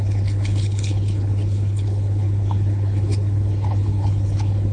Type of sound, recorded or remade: remade